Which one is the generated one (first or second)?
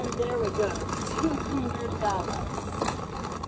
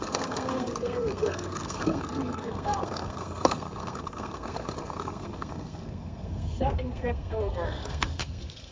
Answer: second